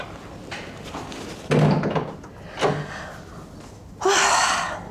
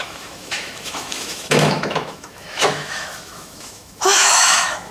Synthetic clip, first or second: second